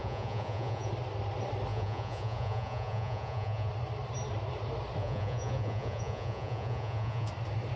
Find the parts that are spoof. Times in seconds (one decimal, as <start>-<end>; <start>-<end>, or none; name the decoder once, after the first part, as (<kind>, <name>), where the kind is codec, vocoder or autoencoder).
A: 0.0-0.9 (vocoder, Vocos); 1.7-3.7; 5.0-7.3